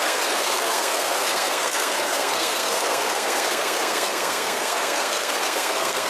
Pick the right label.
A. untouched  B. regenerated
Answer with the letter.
B